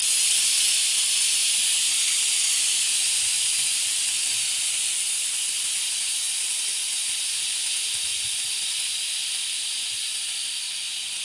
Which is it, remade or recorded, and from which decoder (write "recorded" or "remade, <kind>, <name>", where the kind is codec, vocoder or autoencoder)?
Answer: recorded